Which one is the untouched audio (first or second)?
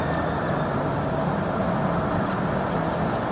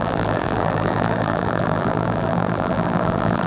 first